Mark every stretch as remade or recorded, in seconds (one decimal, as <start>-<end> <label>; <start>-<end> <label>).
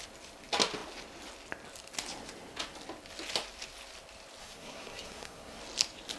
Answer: 0.0-4.4 recorded; 4.4-5.6 remade; 5.6-6.2 recorded